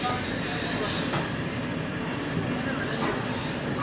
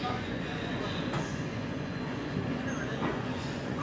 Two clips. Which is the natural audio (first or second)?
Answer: first